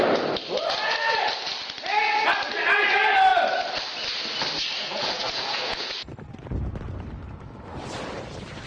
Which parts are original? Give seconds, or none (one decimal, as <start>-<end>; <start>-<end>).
0.0-4.8; 6.1-8.7